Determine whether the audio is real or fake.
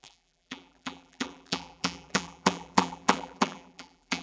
fake